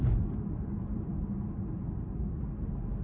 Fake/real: real